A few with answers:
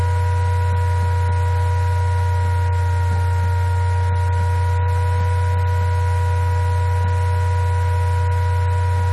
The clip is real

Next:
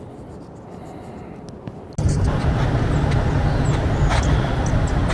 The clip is real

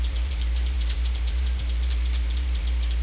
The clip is fake